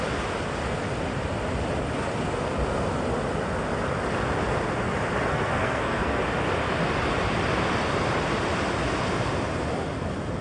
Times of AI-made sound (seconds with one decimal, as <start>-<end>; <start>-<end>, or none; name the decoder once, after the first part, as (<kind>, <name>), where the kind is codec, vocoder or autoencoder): 5.3-6.2 (codec, SNAC)